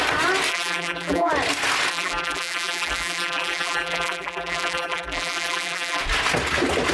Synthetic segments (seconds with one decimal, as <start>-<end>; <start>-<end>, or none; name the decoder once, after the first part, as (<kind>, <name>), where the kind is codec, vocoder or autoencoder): 0.5-1.3 (vocoder, BigVGAN v2); 1.9-6.0